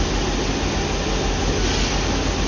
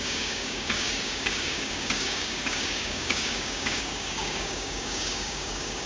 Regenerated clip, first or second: second